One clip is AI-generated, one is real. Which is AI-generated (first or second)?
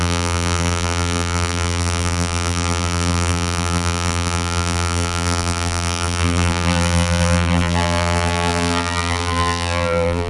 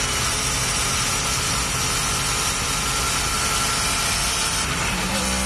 first